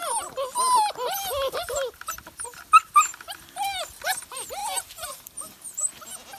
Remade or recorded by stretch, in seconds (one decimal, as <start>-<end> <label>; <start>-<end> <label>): 0.0-4.6 recorded; 4.6-6.0 remade; 6.0-6.4 recorded